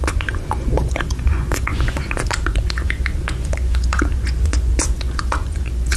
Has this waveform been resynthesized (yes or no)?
yes